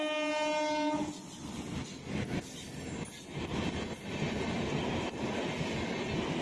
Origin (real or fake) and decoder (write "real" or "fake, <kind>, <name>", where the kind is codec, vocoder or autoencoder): real